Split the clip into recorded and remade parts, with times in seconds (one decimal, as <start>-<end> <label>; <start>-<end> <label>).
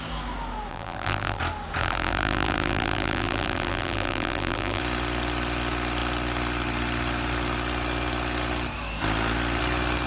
0.0-0.7 recorded; 0.7-1.4 remade; 1.4-1.8 recorded; 1.8-4.8 remade; 4.8-10.1 recorded